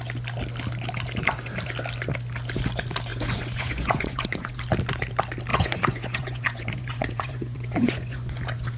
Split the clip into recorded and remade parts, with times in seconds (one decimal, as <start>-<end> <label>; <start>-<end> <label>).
0.0-3.1 recorded; 3.1-4.6 remade; 4.6-5.5 recorded; 5.5-8.4 remade; 8.4-8.8 recorded